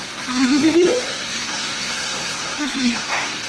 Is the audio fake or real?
fake